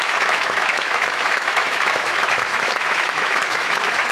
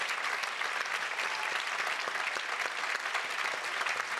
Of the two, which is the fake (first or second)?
first